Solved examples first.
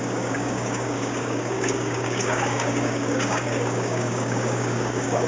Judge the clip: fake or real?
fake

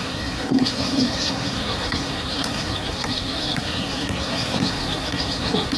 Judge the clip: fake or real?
fake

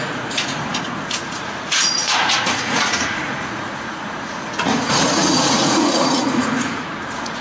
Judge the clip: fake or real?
fake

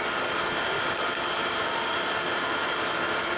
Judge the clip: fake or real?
real